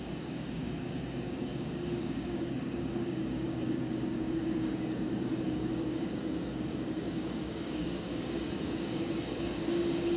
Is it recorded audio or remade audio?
remade